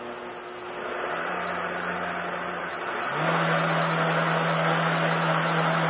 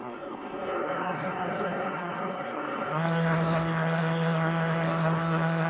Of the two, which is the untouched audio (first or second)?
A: first